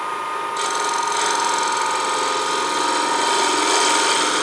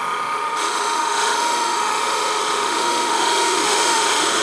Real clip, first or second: first